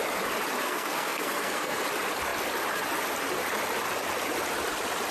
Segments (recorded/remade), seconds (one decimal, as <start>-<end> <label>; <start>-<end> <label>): 0.0-0.6 recorded; 0.6-1.8 remade; 1.8-5.1 recorded